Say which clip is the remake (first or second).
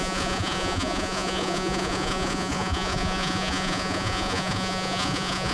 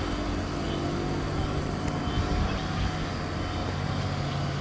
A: first